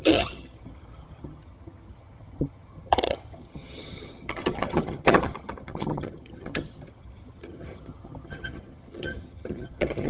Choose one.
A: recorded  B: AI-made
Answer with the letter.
B